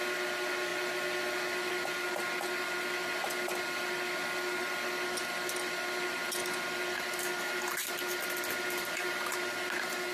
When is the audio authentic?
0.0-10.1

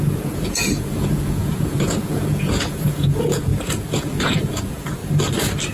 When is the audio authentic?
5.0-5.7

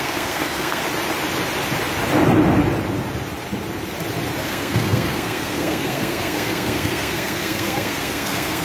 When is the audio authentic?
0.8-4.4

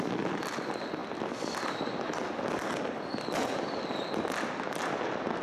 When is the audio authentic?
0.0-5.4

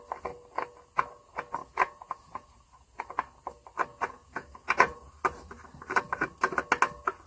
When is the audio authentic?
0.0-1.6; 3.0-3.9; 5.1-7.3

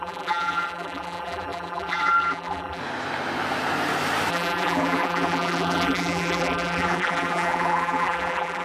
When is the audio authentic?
2.8-4.3